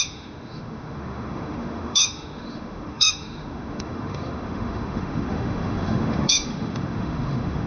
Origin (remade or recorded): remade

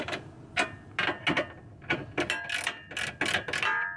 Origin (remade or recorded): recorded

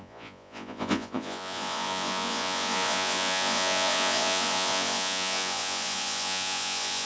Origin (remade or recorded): remade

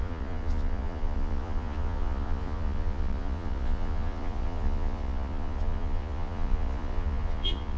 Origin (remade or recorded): remade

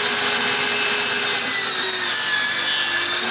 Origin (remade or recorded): recorded